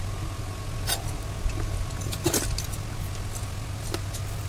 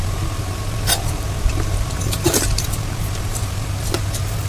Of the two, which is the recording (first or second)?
first